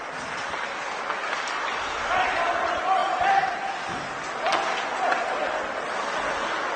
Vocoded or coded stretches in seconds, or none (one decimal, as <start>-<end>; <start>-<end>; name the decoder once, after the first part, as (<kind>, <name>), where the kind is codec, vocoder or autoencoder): none